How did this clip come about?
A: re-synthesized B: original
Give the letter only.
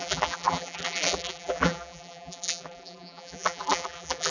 A